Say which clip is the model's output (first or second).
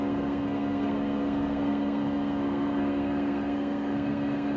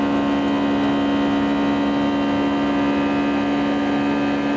first